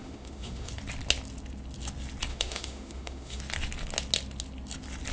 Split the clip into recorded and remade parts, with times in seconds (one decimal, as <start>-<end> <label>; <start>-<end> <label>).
0.0-0.7 remade; 0.7-2.3 recorded; 2.3-3.4 remade; 3.4-5.1 recorded